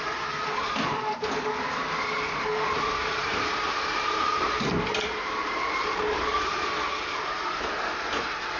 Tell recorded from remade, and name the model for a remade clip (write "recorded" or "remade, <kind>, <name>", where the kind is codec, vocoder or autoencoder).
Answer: remade, vocoder, BigVGAN v2